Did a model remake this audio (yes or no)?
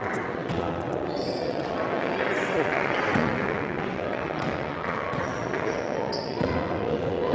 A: yes